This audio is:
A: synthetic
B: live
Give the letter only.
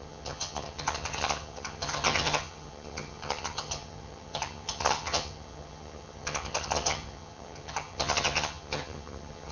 A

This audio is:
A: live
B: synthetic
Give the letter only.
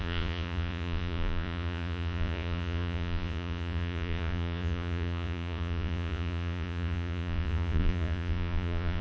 B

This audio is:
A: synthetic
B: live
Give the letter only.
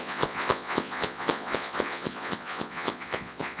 A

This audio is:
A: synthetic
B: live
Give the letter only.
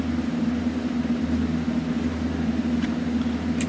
B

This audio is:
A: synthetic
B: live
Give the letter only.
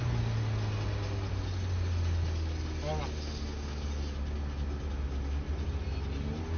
B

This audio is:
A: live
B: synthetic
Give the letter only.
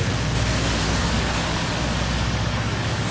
B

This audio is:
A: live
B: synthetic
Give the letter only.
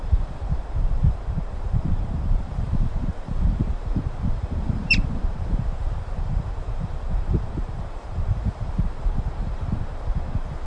B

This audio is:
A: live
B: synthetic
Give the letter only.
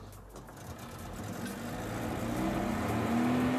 A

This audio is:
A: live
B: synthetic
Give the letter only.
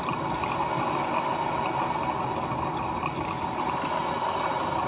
A